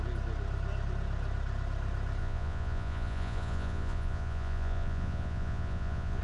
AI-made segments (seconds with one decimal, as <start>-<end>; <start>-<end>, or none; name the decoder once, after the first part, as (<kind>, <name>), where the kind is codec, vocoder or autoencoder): 2.2-6.2 (vocoder, Vocos)